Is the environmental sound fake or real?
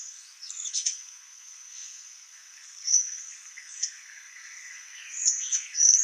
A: fake